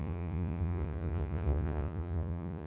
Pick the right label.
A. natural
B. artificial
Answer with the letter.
B